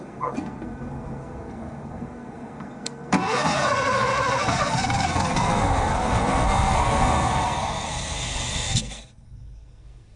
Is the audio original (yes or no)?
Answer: no